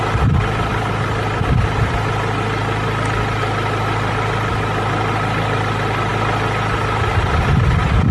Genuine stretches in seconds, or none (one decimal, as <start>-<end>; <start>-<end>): 0.0-8.1